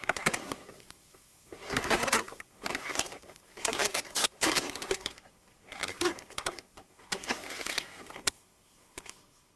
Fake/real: fake